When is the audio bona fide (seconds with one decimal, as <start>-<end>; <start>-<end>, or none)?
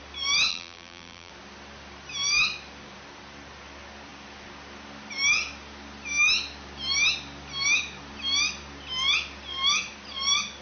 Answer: 0.0-0.5; 1.3-10.6